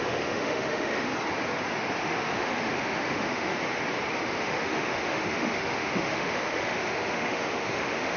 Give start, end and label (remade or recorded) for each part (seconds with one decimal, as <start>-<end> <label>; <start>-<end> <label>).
0.0-1.1 remade; 1.1-2.0 recorded; 2.0-3.5 remade; 3.5-4.1 recorded; 4.1-8.2 remade